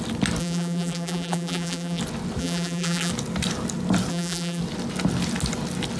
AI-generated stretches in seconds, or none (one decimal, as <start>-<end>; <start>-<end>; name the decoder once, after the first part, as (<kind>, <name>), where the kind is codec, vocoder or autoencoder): 0.4-2.0 (vocoder, BigVGAN v2); 2.4-3.1; 4.1-4.6